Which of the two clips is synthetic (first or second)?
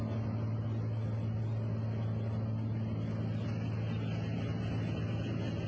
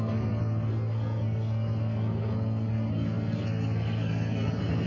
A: second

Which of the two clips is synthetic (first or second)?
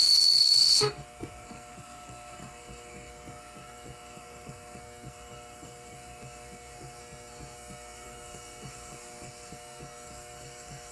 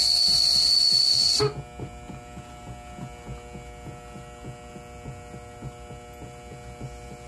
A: first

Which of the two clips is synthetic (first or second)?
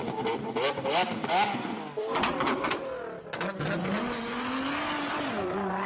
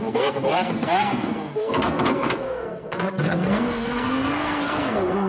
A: second